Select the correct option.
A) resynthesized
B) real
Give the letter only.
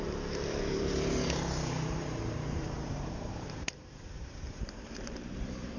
A